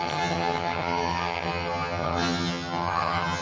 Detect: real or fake fake